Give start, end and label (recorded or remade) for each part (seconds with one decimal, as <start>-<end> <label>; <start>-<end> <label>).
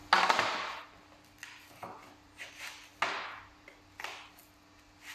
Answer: 0.0-5.1 recorded